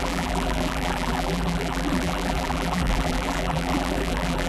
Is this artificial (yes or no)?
yes